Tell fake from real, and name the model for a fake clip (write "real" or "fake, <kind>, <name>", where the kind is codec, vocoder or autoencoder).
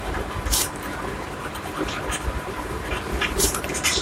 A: fake, vocoder, BigVGAN v2